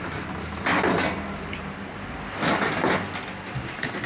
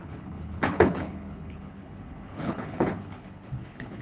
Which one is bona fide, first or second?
first